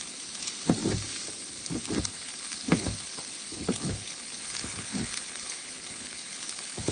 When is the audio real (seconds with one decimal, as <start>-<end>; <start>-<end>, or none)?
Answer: 0.8-2.0